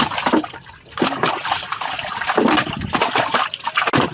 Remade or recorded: recorded